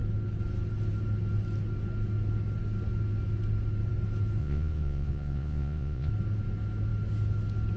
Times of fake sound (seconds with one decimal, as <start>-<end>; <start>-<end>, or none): 4.4-6.1